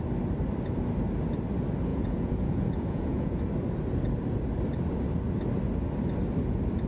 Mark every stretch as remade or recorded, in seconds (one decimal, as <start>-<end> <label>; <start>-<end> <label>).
0.0-1.9 recorded; 1.9-3.4 remade; 3.4-6.9 recorded